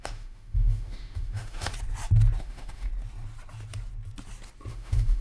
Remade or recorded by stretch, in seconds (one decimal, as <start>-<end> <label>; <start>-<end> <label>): 0.0-1.7 remade; 1.7-2.4 recorded; 2.4-2.9 remade; 2.9-4.7 recorded; 4.7-5.2 remade